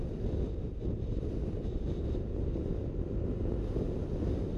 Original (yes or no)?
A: yes